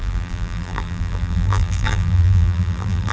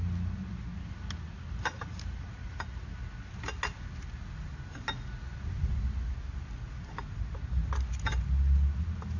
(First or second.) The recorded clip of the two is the second